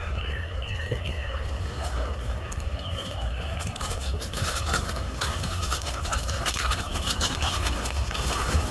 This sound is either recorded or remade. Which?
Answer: remade